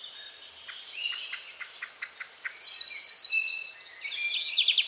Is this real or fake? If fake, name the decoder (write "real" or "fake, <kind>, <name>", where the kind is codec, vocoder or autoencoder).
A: real